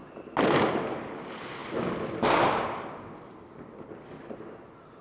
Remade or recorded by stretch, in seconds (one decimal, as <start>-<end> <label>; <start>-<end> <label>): 0.0-5.0 recorded